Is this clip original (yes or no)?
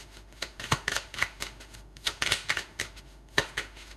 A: no